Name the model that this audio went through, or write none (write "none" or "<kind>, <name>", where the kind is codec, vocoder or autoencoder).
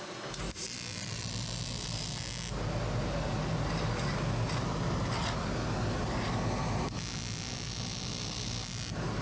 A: none